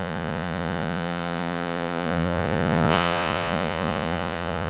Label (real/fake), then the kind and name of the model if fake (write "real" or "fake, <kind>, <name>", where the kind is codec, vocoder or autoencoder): fake, vocoder, Vocos